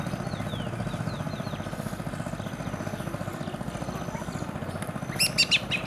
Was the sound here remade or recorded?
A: recorded